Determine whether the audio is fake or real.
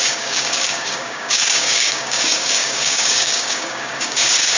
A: fake